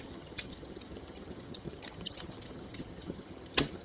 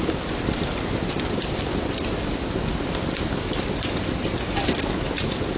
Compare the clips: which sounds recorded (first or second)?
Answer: second